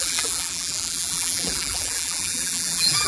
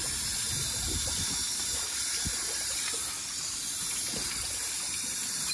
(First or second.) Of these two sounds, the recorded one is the second